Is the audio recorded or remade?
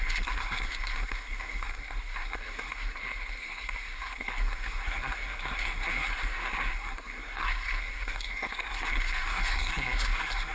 remade